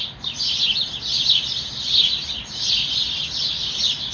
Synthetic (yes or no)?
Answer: no